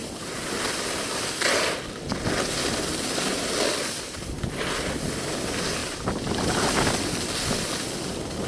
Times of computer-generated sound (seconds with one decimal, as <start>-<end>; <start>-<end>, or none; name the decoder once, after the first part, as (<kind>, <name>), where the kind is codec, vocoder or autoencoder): none